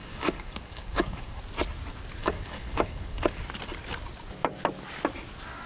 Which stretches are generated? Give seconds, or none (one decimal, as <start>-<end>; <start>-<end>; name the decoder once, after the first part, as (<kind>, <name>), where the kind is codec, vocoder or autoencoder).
0.0-1.4 (codec, DAC); 2.2-3.2